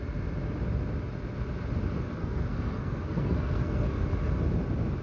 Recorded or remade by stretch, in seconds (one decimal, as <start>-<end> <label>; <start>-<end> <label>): 0.0-2.2 recorded; 2.2-4.1 remade; 4.1-5.0 recorded